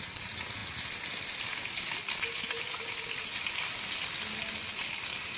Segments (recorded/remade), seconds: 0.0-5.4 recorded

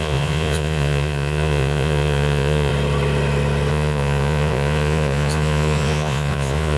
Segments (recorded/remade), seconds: 0.0-2.7 remade; 2.7-3.7 recorded; 3.7-6.8 remade

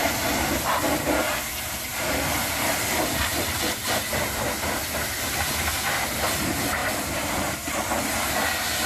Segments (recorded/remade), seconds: 0.0-8.9 recorded

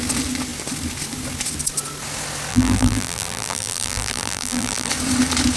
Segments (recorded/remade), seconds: 0.0-2.5 recorded; 2.5-4.9 remade; 4.9-5.6 recorded

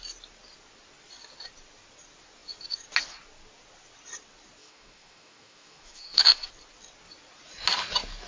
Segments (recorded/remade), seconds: 0.0-4.6 recorded; 4.6-6.5 remade; 6.5-8.3 recorded

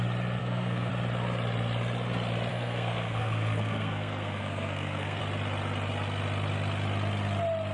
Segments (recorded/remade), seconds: 0.0-0.4 recorded; 0.4-0.9 remade; 0.9-2.5 recorded; 2.5-5.2 remade; 5.2-7.7 recorded

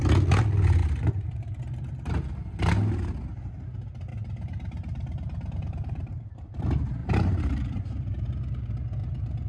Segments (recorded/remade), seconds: 0.0-0.8 recorded; 0.8-1.6 remade; 1.6-4.1 recorded; 4.1-6.6 remade; 6.6-7.0 recorded; 7.0-8.3 remade; 8.3-9.0 recorded; 9.0-9.5 remade

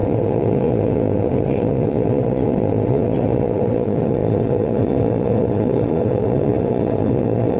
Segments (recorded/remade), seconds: 0.0-7.6 remade